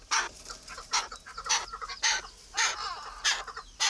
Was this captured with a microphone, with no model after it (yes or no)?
yes